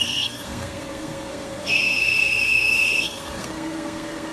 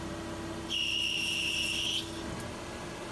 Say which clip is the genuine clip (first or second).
second